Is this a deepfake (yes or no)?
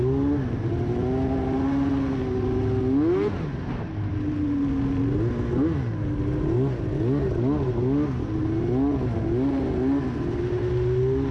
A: no